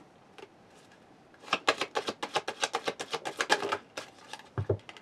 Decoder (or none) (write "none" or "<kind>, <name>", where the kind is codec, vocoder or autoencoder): none